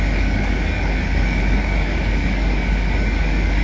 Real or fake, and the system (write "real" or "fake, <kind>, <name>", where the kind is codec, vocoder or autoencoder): fake, codec, DAC